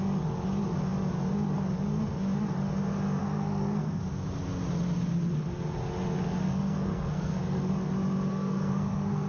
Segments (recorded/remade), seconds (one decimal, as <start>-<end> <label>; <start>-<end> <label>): 0.0-3.2 recorded; 3.2-4.0 remade; 4.0-6.4 recorded; 6.4-7.7 remade; 7.7-8.3 recorded; 8.3-9.3 remade